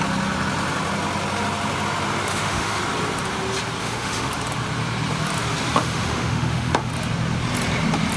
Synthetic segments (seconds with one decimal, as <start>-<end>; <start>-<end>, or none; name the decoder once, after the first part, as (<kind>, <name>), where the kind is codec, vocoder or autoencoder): 2.3-2.8 (autoencoder, DAC-VAE); 3.8-4.3; 5.8-6.9